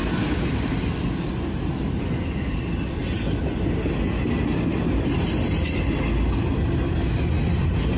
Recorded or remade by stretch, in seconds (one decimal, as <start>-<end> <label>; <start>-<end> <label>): 0.0-8.0 recorded